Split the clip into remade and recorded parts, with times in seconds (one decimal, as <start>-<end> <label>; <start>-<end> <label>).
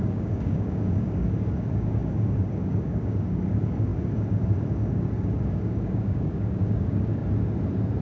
0.0-7.2 remade; 7.2-8.0 recorded